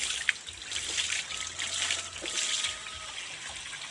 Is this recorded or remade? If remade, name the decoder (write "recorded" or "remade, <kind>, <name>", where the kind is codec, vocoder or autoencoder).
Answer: recorded